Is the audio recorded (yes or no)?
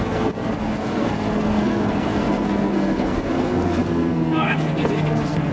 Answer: no